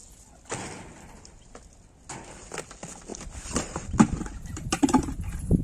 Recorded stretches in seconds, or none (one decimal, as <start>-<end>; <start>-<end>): 0.0-3.1; 5.1-5.6